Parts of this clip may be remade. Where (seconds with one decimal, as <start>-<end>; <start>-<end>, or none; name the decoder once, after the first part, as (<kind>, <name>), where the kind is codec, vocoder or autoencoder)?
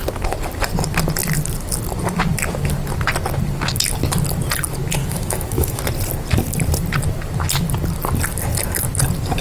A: 5.0-5.8 (autoencoder, DAC-VAE)